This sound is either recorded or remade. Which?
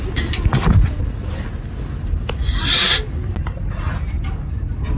recorded